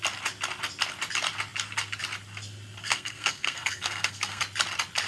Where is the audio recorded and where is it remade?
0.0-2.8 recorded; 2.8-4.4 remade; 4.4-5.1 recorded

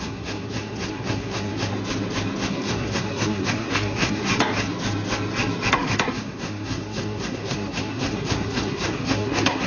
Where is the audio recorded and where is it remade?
0.0-1.7 remade; 1.7-2.5 recorded; 2.5-4.3 remade; 4.3-5.7 recorded; 5.7-9.7 remade

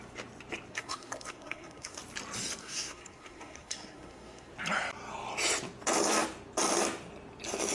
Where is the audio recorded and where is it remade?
0.0-0.7 recorded; 0.7-2.0 remade; 2.0-2.6 recorded; 2.6-4.5 remade; 4.5-7.7 recorded